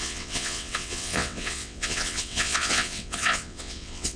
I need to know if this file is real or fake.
fake